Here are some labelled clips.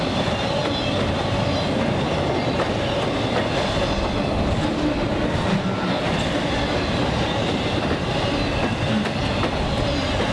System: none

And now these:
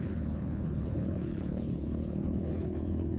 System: codec, HILCodec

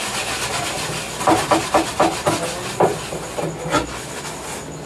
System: none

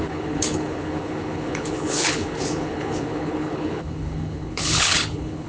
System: codec, HILCodec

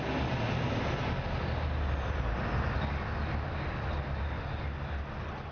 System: none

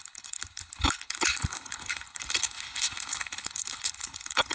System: codec, HILCodec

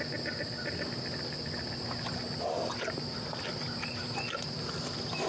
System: none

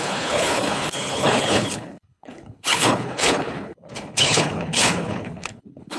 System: codec, HILCodec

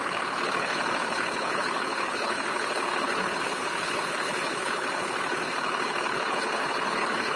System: codec, HILCodec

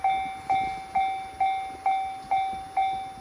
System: none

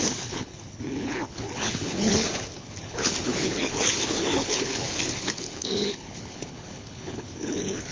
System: codec, HILCodec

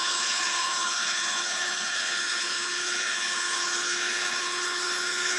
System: codec, HILCodec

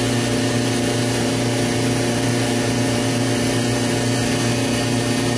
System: none